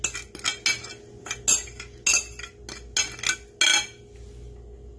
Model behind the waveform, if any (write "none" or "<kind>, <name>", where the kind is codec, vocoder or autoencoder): none